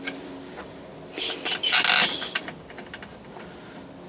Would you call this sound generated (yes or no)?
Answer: no